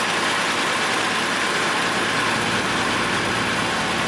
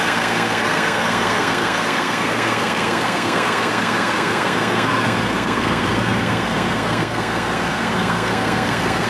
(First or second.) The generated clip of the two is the second